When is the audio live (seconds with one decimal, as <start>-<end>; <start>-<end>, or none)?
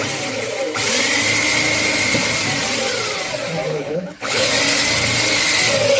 0.0-3.7; 4.5-6.0